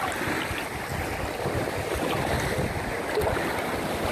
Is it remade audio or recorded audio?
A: recorded